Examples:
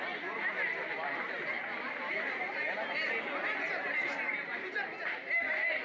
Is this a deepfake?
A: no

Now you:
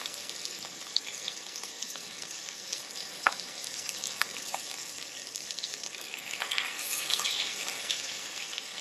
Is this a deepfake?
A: yes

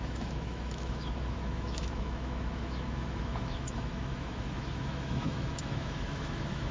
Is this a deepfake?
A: yes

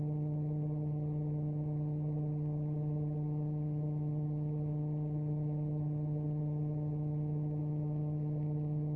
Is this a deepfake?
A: no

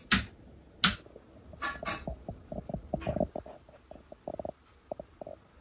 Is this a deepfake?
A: no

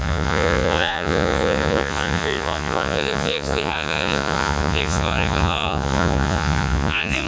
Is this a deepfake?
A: yes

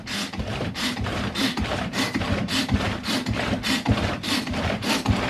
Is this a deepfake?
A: yes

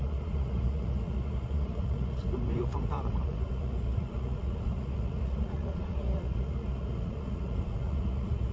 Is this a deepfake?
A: yes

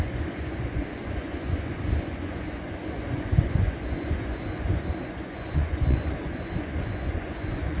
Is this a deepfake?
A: yes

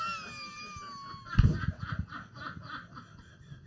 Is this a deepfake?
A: no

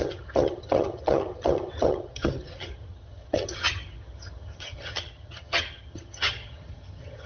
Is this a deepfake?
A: yes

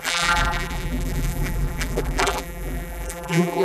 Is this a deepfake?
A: yes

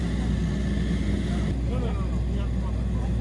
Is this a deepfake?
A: no